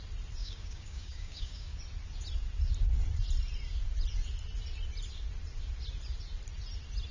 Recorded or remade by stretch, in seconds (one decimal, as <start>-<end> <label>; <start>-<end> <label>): 0.0-0.4 recorded; 0.4-1.8 remade; 1.8-7.1 recorded